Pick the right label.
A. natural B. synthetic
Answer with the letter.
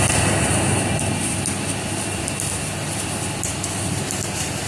A